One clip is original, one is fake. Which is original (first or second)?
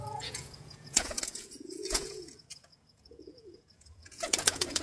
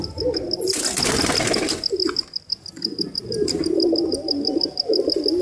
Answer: second